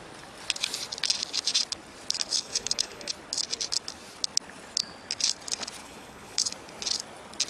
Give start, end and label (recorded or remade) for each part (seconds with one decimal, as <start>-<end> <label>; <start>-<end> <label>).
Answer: 0.0-2.3 recorded; 2.3-3.1 remade; 3.1-5.8 recorded; 5.8-6.5 remade; 6.5-7.5 recorded